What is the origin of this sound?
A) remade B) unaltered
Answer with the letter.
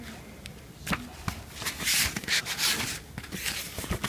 B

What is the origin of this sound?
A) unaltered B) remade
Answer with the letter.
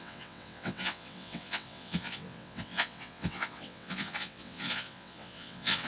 B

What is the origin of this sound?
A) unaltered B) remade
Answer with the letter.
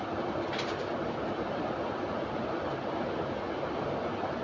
A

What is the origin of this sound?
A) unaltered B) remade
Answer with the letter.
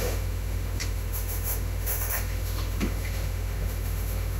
B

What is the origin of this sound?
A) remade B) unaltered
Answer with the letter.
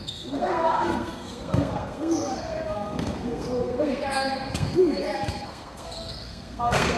A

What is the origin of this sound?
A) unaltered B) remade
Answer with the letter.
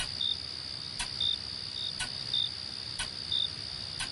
A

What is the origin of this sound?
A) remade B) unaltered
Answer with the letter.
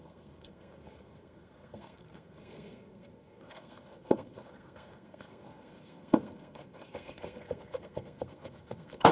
A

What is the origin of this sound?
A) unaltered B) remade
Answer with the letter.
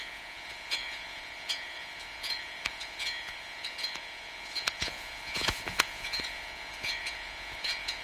B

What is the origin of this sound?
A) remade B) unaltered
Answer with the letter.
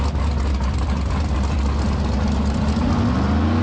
B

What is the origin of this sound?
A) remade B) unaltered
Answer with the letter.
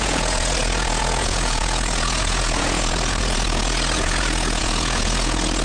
A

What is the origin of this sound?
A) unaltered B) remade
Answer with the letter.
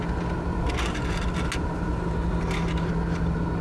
A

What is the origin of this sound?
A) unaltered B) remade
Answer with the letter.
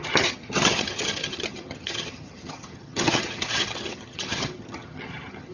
B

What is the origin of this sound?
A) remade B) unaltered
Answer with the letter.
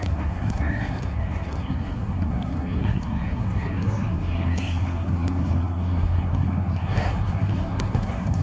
A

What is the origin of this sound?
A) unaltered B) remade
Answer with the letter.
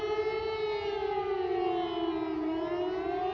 A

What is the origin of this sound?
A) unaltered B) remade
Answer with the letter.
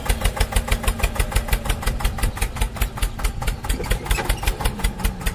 B